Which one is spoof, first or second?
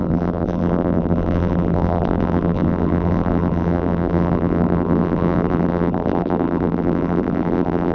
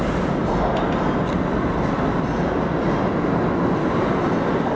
first